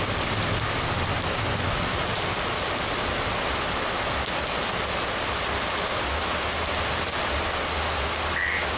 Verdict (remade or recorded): recorded